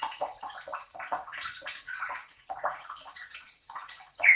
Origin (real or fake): fake